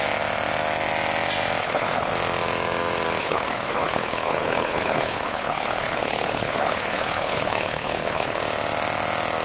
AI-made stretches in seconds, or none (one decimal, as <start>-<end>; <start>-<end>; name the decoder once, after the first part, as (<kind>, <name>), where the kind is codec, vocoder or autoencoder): 1.6-2.1 (codec, HILCodec); 3.2-8.4